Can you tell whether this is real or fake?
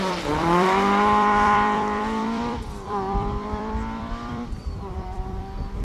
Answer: fake